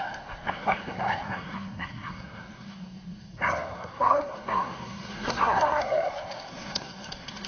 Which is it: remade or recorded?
remade